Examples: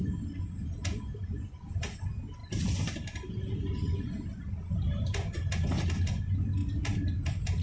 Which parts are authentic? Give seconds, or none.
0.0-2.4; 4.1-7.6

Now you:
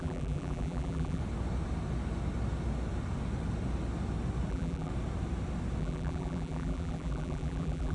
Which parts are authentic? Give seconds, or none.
1.2-4.5; 4.9-5.8

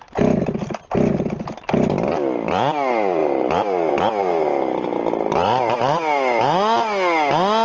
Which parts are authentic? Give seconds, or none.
0.0-7.6